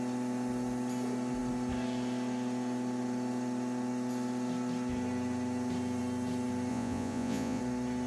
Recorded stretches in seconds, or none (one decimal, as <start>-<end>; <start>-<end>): 0.0-6.7; 7.6-8.1